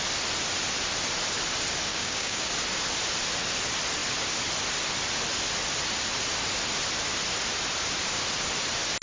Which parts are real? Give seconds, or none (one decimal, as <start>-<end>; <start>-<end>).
0.0-1.9; 2.5-9.0